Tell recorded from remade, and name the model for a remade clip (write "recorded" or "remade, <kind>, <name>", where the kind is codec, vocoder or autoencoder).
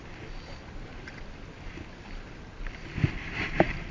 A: recorded